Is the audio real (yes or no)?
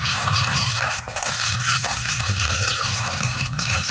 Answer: no